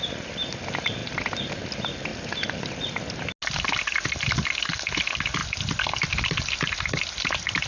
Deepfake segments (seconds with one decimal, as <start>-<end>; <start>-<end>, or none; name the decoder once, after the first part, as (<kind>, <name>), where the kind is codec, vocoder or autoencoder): 1.0-1.5 (vocoder, BigVGAN v2)